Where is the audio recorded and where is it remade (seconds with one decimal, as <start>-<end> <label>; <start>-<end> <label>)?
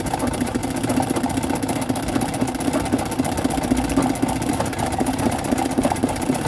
0.0-0.6 remade; 0.6-4.5 recorded; 4.5-6.5 remade